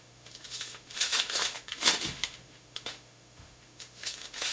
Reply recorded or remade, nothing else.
remade